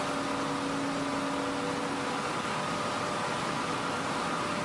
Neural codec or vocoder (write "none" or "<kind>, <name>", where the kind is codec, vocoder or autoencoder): none